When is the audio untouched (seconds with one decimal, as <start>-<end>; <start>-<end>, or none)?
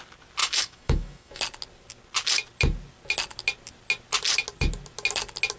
0.0-0.4; 1.4-5.6